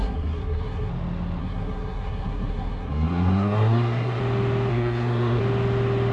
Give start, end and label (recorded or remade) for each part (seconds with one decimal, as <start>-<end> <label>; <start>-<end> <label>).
0.0-0.9 remade; 0.9-1.4 recorded; 1.4-4.2 remade; 4.2-4.7 recorded; 4.7-5.4 remade; 5.4-6.1 recorded